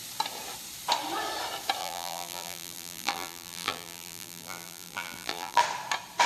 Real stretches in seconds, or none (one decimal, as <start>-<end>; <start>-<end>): 0.0-1.8; 5.6-6.3